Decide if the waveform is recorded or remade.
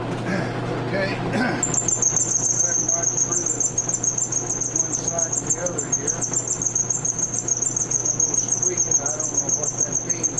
recorded